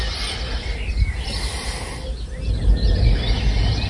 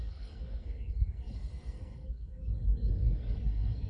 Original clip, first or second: first